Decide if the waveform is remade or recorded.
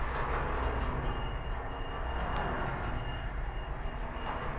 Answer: recorded